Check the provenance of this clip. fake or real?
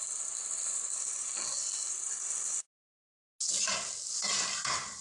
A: real